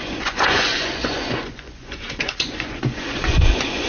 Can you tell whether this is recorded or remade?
remade